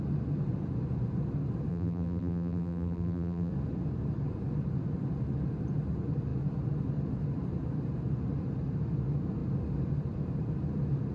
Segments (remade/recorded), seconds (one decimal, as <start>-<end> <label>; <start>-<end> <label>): 0.0-1.7 recorded; 1.7-3.5 remade; 3.5-11.1 recorded